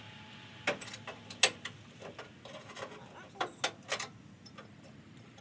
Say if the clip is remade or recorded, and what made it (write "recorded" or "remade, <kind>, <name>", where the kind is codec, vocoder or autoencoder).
recorded